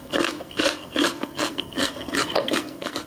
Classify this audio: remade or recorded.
remade